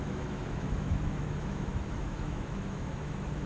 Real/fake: fake